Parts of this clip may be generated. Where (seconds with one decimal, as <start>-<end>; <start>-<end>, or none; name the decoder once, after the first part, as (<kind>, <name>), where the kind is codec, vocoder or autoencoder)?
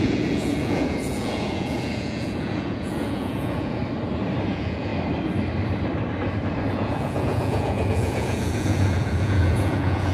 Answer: 0.0-3.8 (vocoder, Vocos); 4.5-4.9; 6.7-10.1